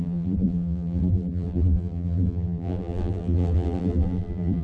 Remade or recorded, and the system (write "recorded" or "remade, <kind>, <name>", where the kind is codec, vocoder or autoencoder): remade, vocoder, BigVGAN v2